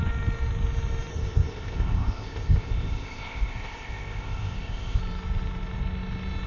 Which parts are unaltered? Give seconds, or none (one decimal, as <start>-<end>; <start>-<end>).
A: 0.0-1.1; 5.0-6.5